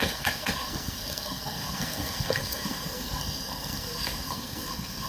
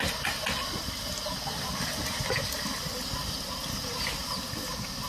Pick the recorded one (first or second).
second